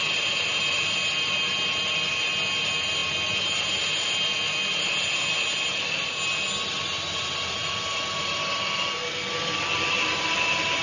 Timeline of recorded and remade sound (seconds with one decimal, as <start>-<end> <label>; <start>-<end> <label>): 0.0-10.8 recorded